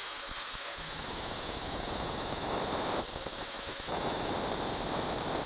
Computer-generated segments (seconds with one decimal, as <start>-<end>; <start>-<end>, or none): 0.0-2.6; 3.3-4.3